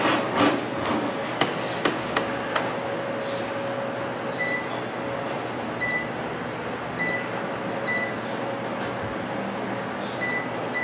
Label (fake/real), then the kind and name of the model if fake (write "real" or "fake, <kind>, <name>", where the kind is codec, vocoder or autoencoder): real